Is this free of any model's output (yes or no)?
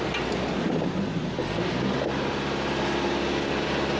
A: yes